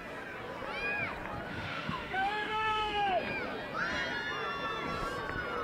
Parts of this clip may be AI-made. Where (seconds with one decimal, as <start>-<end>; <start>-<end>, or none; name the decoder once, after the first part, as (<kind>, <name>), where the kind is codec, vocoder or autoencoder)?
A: 1.5-3.1 (autoencoder, DAC-VAE)